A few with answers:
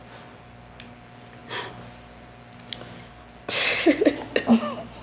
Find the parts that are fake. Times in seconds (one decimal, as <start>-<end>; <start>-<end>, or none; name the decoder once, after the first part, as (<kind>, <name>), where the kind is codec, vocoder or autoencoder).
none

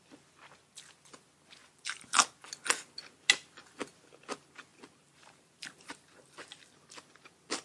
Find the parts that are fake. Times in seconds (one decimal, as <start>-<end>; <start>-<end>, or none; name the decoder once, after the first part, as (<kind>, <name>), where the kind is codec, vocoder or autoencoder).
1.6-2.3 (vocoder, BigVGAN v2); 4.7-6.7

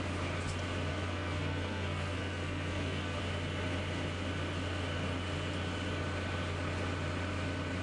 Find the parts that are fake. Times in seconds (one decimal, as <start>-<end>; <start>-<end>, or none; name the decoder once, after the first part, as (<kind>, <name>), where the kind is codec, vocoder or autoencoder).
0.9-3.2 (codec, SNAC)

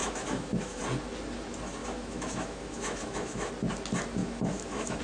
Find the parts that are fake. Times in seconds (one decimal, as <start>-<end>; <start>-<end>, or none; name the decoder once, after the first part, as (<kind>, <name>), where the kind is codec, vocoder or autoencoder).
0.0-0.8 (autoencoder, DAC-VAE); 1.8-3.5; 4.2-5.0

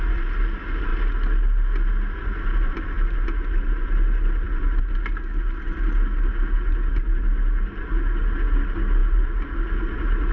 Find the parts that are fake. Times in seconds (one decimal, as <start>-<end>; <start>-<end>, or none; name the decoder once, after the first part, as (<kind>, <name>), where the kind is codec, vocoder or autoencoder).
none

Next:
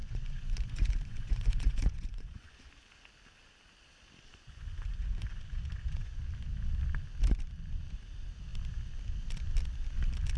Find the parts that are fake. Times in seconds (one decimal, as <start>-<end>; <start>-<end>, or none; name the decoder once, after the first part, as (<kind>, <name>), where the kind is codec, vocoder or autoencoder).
0.0-2.7 (vocoder, Vocos); 4.3-6.2

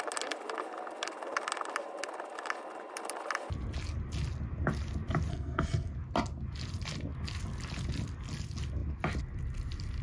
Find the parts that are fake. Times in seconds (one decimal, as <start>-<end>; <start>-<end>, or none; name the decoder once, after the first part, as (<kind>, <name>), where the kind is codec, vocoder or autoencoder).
5.3-5.9 (codec, SNAC)